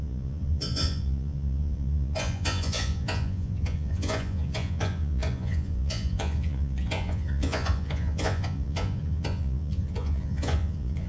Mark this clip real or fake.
fake